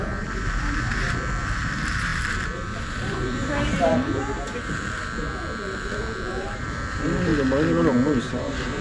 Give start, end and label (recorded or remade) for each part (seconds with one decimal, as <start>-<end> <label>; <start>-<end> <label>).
0.0-7.3 remade; 7.3-8.2 recorded; 8.2-8.8 remade

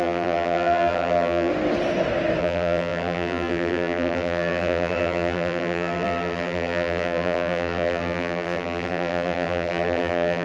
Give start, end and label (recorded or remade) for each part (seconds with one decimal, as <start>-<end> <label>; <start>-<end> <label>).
0.0-1.5 remade; 1.5-2.4 recorded; 2.4-10.4 remade